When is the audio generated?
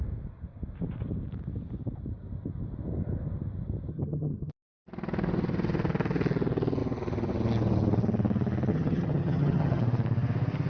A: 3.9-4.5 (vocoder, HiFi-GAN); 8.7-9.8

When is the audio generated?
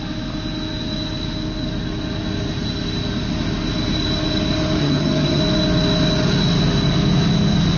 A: 4.8-5.4 (vocoder, HiFi-GAN)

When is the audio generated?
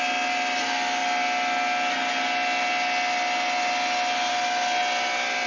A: none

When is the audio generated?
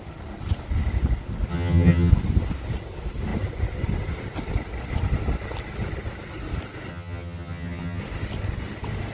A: 1.5-2.1 (vocoder, HiFi-GAN); 6.9-8.0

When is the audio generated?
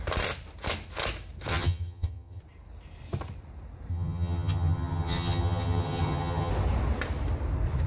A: 1.5-2.4 (vocoder, HiFi-GAN); 3.9-6.5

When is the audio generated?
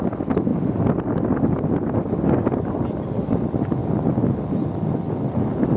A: none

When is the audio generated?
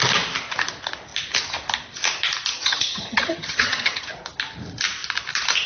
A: 2.5-4.1 (vocoder, HiFi-GAN)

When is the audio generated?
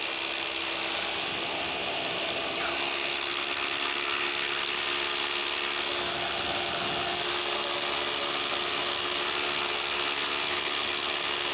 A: none